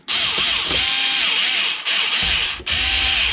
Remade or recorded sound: recorded